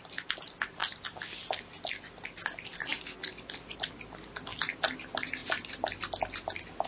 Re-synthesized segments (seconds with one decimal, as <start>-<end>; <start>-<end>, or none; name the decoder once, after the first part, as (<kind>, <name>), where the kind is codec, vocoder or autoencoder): none

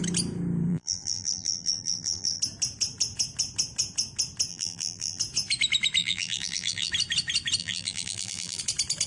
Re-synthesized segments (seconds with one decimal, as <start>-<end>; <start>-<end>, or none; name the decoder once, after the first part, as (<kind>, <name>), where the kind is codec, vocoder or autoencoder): 0.7-2.4 (vocoder, BigVGAN v2); 4.5-5.2; 6.0-6.9; 7.6-8.6